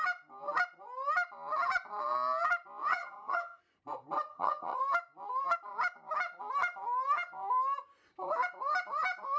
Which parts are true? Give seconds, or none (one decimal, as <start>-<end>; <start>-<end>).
0.0-2.9; 3.6-4.3; 4.8-9.4